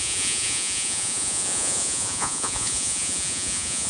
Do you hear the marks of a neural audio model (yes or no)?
yes